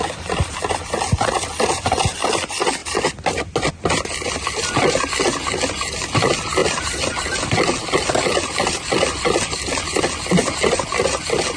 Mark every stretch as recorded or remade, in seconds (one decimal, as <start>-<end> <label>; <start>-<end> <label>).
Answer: 0.0-11.6 recorded